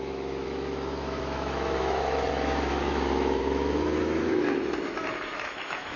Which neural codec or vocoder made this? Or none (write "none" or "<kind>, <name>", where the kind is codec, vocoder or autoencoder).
autoencoder, DAC-VAE